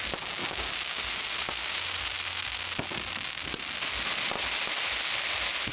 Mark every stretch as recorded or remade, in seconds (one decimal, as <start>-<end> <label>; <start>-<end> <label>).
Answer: 0.0-0.4 recorded; 0.4-1.0 remade; 1.0-5.7 recorded